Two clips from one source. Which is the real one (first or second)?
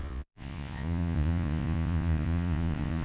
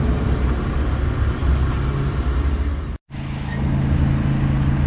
second